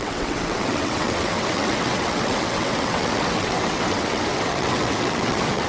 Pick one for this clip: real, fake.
fake